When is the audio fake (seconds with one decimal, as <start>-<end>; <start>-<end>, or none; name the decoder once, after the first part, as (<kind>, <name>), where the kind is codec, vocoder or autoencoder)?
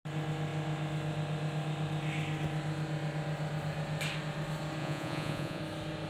4.8-5.6 (vocoder, Vocos)